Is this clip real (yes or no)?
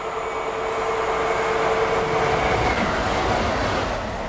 yes